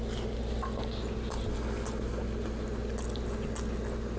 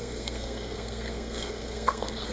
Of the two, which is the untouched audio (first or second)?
first